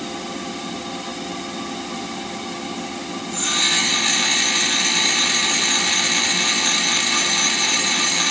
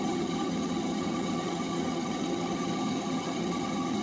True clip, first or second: first